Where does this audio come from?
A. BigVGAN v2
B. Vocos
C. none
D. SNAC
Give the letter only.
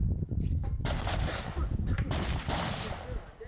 C